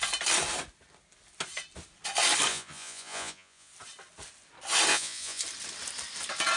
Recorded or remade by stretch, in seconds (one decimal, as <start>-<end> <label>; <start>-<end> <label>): 0.0-2.5 recorded; 2.5-3.7 remade; 3.7-4.9 recorded; 4.9-5.4 remade; 5.4-6.6 recorded